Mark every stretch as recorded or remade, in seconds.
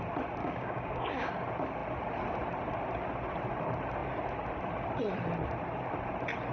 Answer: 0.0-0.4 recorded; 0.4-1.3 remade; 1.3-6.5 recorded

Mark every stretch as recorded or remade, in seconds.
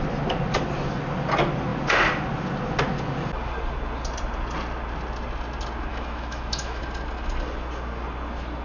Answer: 0.0-5.9 recorded; 5.9-6.8 remade; 6.8-8.6 recorded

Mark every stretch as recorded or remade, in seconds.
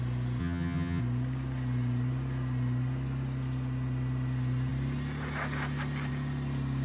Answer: 0.0-0.4 recorded; 0.4-1.0 remade; 1.0-6.8 recorded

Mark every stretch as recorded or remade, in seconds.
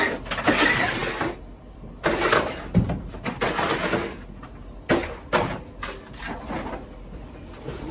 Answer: 0.0-7.9 recorded